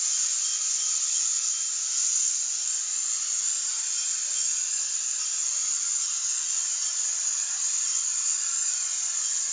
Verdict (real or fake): real